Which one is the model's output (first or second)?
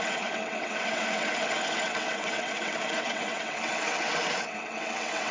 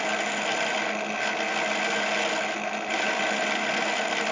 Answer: first